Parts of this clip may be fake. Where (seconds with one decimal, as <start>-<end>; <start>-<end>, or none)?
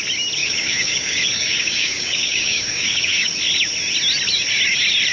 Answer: 0.4-3.3